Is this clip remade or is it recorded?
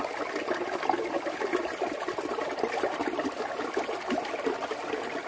recorded